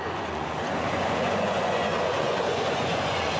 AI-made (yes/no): yes